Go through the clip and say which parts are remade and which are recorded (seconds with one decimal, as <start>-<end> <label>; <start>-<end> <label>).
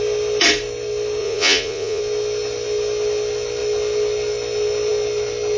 0.0-1.2 recorded; 1.2-2.0 remade; 2.0-5.6 recorded